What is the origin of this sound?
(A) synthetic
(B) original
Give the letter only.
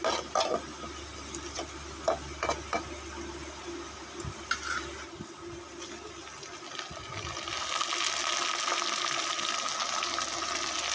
B